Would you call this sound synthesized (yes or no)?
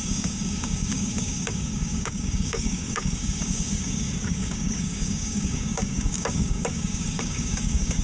yes